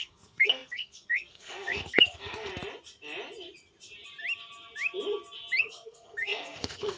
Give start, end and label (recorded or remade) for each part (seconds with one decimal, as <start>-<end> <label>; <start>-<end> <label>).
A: 0.0-2.5 remade; 2.5-5.6 recorded; 5.6-7.0 remade